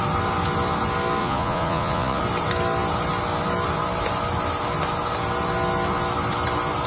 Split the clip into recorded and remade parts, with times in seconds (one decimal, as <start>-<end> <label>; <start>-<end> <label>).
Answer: 0.0-1.2 recorded; 1.2-2.2 remade; 2.2-6.9 recorded